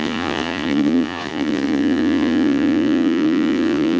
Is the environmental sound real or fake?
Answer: fake